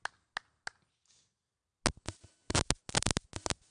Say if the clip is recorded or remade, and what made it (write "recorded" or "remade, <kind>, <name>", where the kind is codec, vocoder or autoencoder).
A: recorded